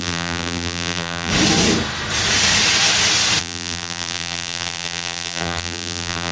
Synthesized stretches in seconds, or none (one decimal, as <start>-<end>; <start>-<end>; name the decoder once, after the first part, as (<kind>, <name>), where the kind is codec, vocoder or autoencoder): 0.0-1.3 (vocoder, BigVGAN v2); 3.4-6.3